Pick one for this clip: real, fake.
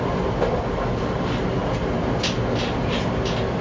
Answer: real